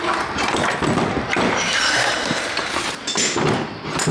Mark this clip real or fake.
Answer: real